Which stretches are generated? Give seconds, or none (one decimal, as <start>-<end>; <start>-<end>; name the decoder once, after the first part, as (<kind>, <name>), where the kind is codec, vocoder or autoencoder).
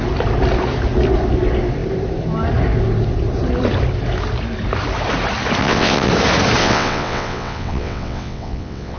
5.6-6.1 (vocoder, WaveNeXt); 6.6-9.0